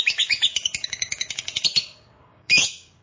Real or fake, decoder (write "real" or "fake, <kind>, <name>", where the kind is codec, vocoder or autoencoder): fake, codec, DAC